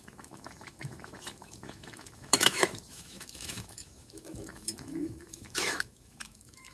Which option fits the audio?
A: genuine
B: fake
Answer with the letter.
B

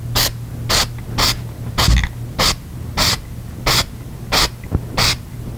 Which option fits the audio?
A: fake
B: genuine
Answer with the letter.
B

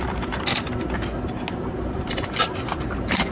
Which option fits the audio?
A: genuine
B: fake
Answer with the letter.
A